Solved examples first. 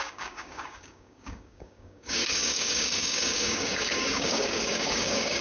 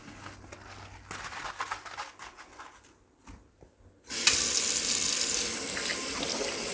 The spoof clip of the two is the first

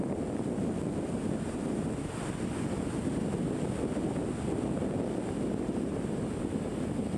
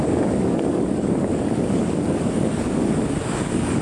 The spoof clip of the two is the second